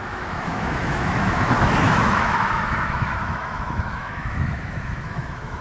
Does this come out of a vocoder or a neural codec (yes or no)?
yes